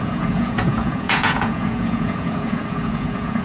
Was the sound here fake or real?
fake